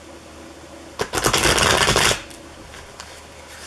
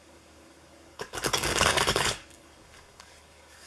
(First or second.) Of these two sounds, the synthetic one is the second